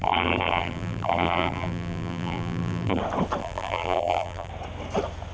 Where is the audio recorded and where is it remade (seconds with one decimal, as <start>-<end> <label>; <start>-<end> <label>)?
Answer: 0.0-3.0 remade; 3.0-3.4 recorded; 3.4-4.5 remade; 4.5-5.3 recorded